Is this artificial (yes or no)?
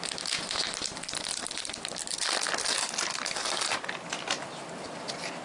yes